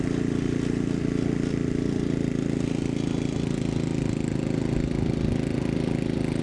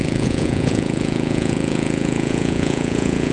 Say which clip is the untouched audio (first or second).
first